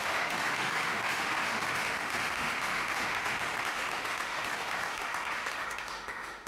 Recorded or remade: remade